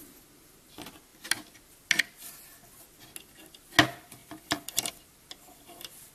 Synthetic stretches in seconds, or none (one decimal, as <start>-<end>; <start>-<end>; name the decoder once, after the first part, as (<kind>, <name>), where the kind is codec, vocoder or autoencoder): 4.2-4.9 (vocoder, BigVGAN v2)